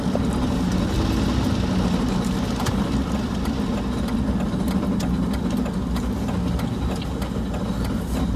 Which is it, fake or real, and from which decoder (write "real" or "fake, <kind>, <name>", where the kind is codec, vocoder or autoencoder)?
real